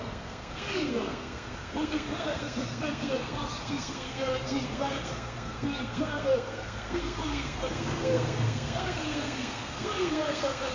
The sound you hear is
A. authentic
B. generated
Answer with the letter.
B